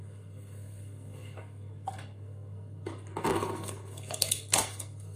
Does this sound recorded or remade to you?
remade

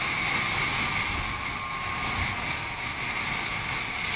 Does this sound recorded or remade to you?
recorded